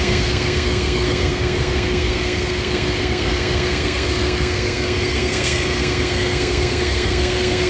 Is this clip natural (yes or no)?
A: no